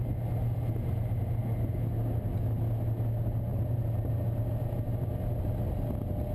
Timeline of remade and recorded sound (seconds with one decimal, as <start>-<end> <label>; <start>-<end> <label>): 0.0-3.5 recorded; 3.5-4.1 remade; 4.1-6.3 recorded